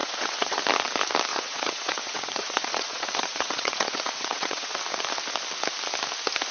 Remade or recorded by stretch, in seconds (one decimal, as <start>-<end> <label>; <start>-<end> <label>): 0.0-0.6 remade; 0.6-1.3 recorded; 1.3-4.7 remade; 4.7-6.5 recorded

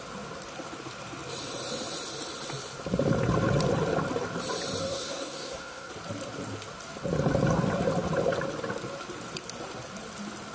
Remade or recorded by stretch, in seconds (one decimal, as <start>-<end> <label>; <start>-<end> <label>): 0.0-4.8 recorded; 4.8-5.9 remade; 5.9-10.5 recorded

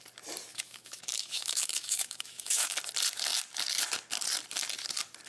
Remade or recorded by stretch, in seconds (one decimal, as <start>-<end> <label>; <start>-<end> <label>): 0.0-0.5 recorded; 0.5-2.8 remade; 2.8-5.3 recorded

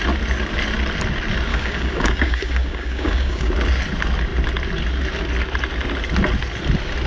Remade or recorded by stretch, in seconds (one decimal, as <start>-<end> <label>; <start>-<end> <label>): 0.0-1.5 recorded; 1.5-3.5 remade; 3.5-7.1 recorded

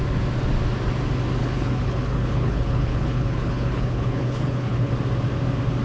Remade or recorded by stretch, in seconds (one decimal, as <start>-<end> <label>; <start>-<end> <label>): 0.0-1.4 recorded; 1.4-4.9 remade; 4.9-5.8 recorded